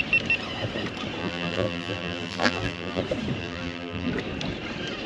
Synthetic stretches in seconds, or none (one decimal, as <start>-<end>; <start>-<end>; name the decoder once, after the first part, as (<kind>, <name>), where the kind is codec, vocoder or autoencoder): 1.2-3.0 (vocoder, BigVGAN v2); 3.4-4.1